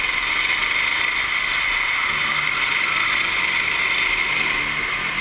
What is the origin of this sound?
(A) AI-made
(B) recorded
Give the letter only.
B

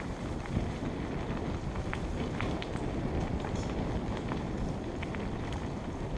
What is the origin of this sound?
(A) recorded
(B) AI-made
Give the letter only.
A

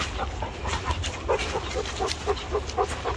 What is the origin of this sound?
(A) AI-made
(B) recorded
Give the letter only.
B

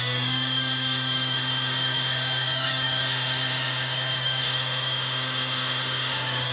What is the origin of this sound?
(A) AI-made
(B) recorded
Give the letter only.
A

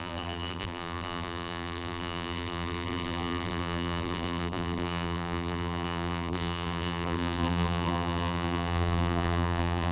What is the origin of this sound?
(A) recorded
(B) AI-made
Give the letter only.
B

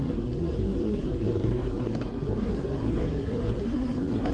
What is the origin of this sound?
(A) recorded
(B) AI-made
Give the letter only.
B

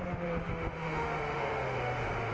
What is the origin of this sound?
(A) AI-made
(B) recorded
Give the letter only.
A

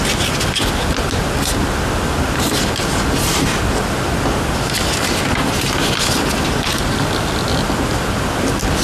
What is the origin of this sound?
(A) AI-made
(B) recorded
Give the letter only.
B